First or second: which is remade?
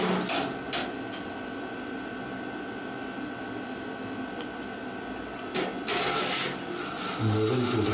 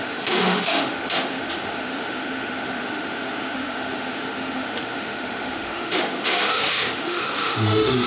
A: second